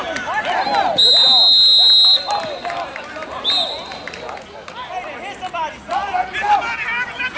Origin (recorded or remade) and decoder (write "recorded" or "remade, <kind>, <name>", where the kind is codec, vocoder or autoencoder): recorded